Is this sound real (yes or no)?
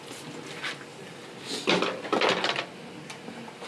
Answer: yes